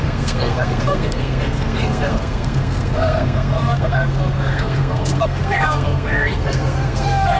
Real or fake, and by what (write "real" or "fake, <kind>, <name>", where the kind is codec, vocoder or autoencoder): fake, codec, SNAC